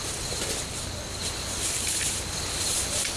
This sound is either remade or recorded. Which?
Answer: recorded